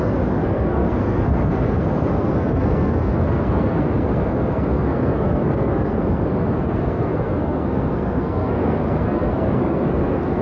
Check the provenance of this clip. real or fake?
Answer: fake